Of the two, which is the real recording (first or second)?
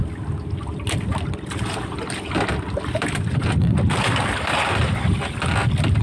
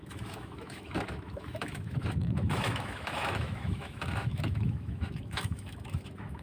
first